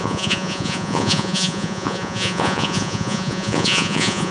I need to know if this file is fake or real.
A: fake